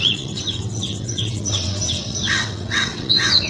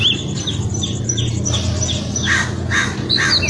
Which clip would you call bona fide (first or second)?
second